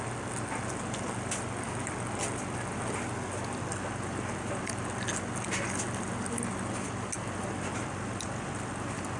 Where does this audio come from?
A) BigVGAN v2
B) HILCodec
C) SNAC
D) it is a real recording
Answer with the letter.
D